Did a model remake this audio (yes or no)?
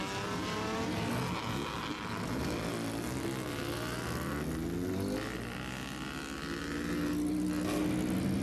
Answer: no